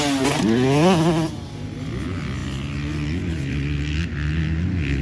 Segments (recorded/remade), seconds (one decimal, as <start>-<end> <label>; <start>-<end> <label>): 0.0-5.0 recorded